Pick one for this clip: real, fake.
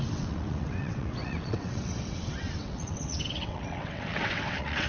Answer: fake